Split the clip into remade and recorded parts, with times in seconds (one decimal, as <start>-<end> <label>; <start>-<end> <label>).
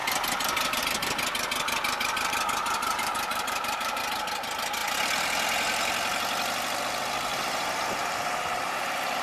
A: 0.0-0.8 remade; 0.8-2.6 recorded; 2.6-4.0 remade; 4.0-7.3 recorded; 7.3-9.2 remade